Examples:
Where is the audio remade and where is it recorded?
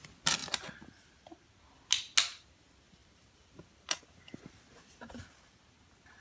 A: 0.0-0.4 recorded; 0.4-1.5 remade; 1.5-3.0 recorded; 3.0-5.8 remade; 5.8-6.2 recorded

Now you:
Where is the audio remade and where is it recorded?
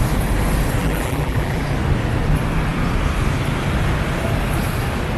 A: 0.0-0.8 recorded; 0.8-1.6 remade; 1.6-5.2 recorded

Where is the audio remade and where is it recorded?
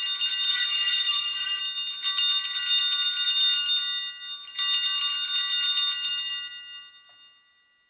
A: 0.0-0.5 recorded; 0.5-1.6 remade; 1.6-7.9 recorded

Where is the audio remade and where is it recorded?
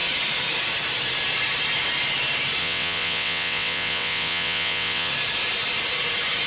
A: 0.0-2.6 recorded; 2.6-5.1 remade; 5.1-6.5 recorded